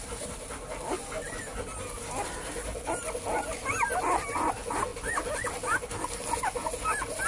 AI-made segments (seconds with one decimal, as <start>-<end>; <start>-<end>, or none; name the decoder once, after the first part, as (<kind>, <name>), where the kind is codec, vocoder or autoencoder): none